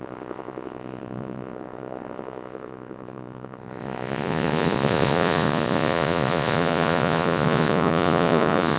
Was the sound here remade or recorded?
remade